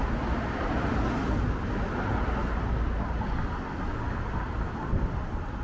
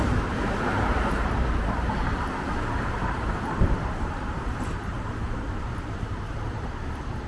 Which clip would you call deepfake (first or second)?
second